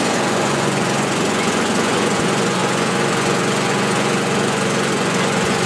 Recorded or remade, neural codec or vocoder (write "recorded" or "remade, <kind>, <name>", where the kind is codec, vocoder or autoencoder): remade, vocoder, Vocos